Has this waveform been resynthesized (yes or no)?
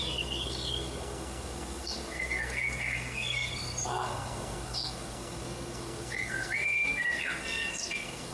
yes